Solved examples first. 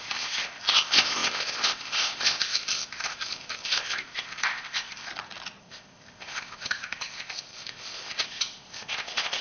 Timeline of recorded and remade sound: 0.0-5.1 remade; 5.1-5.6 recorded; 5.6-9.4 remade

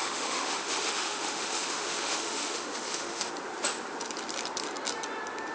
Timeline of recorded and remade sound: 0.0-3.3 remade; 3.3-5.5 recorded